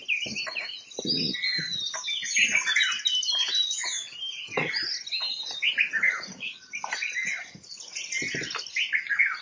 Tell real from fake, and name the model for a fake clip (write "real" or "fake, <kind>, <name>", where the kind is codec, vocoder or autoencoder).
real